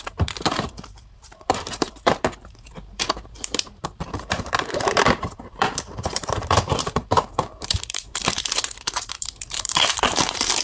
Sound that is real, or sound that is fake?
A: fake